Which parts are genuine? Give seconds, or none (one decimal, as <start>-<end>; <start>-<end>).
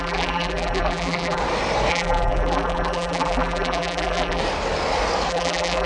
1.4-1.9; 4.4-5.3